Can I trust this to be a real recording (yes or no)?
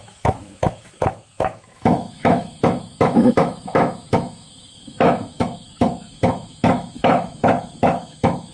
no